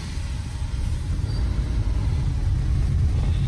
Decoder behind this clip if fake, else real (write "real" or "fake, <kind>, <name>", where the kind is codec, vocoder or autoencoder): real